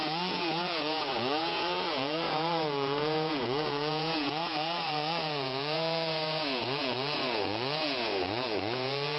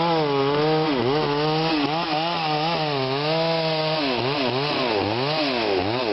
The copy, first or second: first